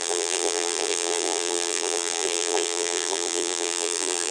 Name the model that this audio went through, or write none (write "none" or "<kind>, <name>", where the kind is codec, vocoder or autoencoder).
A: vocoder, BigVGAN v2